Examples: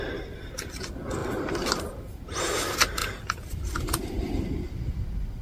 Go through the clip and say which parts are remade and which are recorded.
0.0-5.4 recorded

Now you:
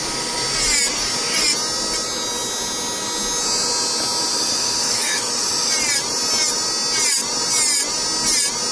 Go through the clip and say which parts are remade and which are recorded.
0.0-4.3 recorded; 4.3-5.7 remade; 5.7-8.7 recorded

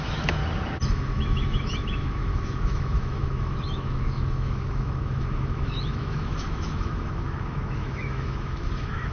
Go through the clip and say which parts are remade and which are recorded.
0.0-0.4 remade; 0.4-0.9 recorded; 0.9-9.1 remade

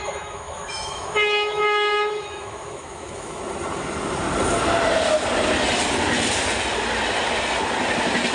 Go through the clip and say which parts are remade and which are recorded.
0.0-3.4 remade; 3.4-8.3 recorded